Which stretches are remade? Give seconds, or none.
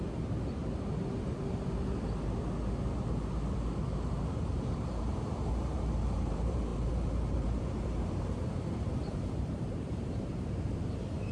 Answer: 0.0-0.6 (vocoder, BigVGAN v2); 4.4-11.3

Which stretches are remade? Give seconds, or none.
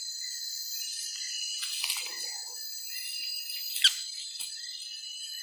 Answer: 0.6-1.3 (vocoder, BigVGAN v2)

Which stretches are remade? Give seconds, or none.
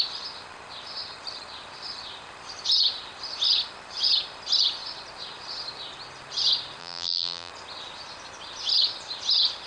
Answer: 6.8-7.5 (vocoder, BigVGAN v2)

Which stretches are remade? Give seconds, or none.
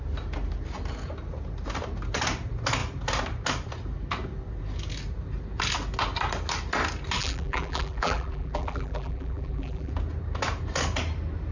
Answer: 7.2-9.9 (vocoder, BigVGAN v2)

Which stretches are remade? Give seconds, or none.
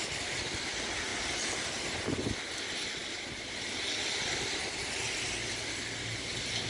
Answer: none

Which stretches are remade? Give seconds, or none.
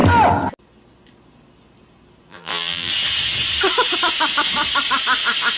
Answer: 2.3-2.9 (vocoder, BigVGAN v2)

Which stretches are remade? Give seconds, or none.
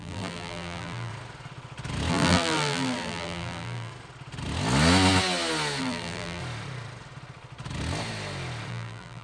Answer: 0.0-1.1 (vocoder, BigVGAN v2); 2.1-3.9; 5.8-6.4; 8.7-9.2